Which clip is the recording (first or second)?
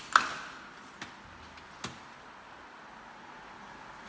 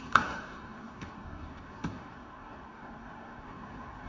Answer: first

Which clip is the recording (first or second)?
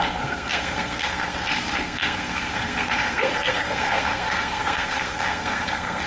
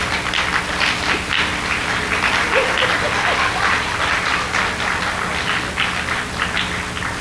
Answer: second